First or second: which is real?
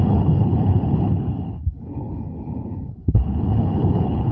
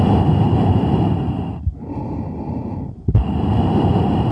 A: second